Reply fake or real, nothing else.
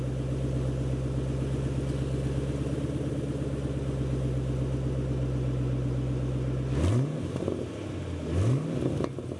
real